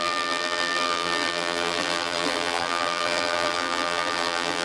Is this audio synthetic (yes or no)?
yes